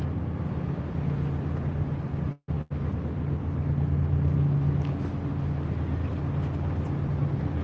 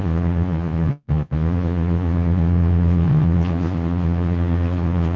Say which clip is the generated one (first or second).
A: second